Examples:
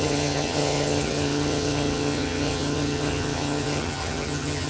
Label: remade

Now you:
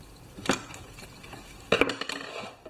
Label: recorded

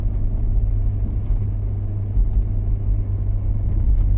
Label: recorded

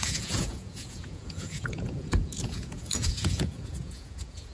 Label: remade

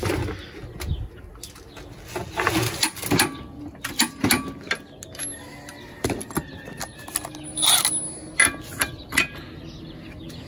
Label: recorded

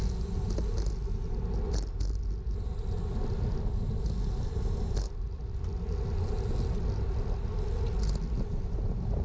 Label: recorded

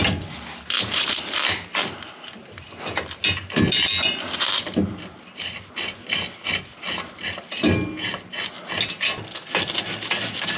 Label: recorded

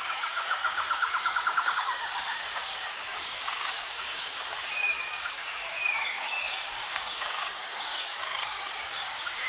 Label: remade